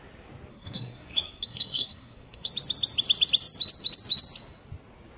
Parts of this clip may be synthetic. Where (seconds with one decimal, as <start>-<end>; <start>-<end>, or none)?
0.5-2.5

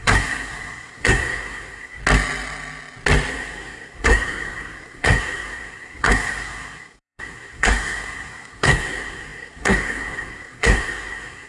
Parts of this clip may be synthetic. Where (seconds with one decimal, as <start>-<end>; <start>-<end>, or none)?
0.0-2.0; 3.3-11.5

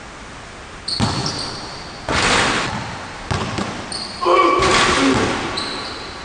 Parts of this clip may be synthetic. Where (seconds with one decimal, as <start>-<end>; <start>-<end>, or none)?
none

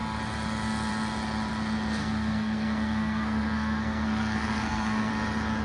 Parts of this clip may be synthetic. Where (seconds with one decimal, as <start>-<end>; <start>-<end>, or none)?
2.0-5.1

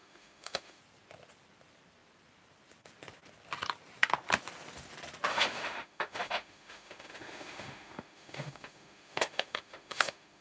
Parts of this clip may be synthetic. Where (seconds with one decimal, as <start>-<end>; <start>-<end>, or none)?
0.0-0.8; 5.3-10.4

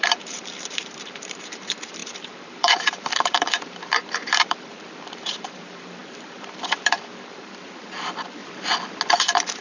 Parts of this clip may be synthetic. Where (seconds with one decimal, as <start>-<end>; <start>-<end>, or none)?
0.0-8.4; 9.1-9.6